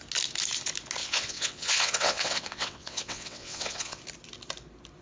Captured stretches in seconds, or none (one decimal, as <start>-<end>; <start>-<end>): 0.0-1.0; 4.0-5.0